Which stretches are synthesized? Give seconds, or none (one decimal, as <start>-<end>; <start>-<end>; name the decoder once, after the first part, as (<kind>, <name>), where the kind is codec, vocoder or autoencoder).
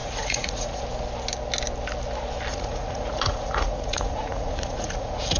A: 0.0-0.8 (vocoder, Vocos); 2.5-5.4